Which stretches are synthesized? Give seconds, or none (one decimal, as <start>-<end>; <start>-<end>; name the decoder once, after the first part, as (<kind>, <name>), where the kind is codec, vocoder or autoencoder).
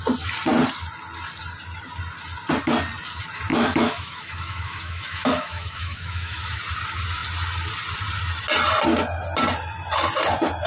3.5-6.6 (autoencoder, DAC-VAE)